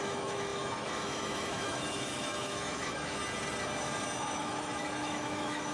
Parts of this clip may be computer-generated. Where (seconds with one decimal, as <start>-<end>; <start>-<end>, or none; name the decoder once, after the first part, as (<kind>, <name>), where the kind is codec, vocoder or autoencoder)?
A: 0.0-3.2 (autoencoder, DAC-VAE); 4.2-5.7